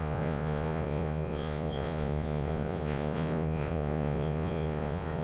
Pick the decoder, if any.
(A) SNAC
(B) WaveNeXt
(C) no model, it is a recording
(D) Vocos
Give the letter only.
D